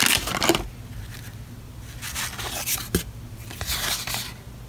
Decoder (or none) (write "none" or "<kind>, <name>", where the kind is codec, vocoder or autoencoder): none